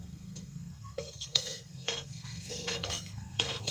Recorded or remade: remade